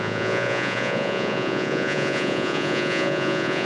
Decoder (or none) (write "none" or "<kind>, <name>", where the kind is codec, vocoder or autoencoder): vocoder, Vocos